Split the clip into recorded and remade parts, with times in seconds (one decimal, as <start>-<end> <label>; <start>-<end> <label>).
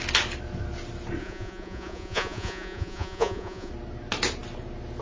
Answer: 0.0-1.2 recorded; 1.2-3.7 remade; 3.7-5.0 recorded